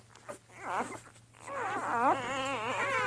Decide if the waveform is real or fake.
real